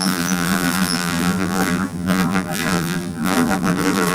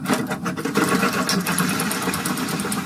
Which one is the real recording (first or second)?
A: second